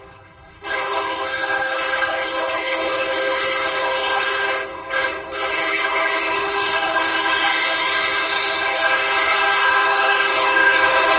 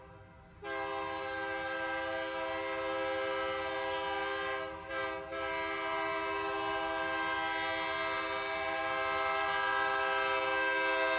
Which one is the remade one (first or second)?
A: first